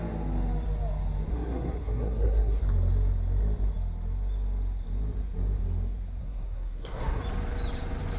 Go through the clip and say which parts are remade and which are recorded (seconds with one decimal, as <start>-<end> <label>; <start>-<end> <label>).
0.0-1.3 recorded; 1.3-2.6 remade; 2.6-6.2 recorded; 6.2-7.2 remade; 7.2-8.2 recorded